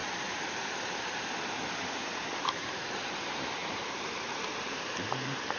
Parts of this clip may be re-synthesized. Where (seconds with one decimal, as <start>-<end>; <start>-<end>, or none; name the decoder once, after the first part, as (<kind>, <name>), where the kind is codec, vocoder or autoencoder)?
1.8-5.6 (vocoder, BigVGAN v2)